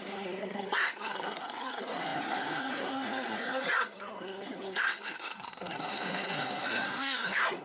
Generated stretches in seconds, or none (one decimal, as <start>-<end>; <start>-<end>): 0.0-7.6